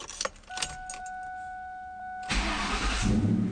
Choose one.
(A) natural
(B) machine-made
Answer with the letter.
A